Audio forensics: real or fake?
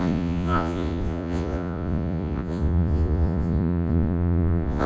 fake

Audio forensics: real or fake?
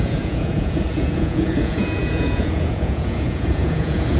fake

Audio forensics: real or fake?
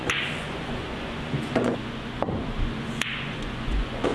fake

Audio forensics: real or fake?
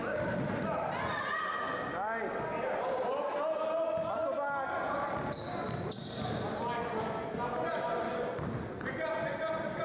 real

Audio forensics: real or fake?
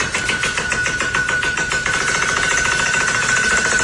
real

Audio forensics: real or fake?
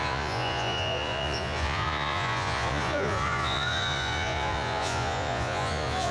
fake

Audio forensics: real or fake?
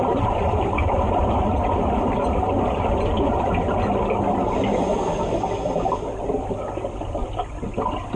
real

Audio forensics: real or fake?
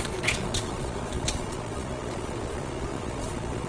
fake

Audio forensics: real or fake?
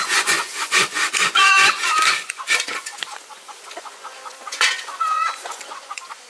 fake